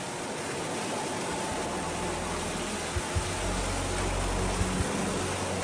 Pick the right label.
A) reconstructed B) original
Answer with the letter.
B